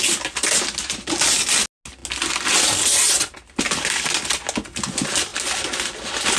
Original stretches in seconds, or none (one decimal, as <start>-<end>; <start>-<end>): 0.0-6.4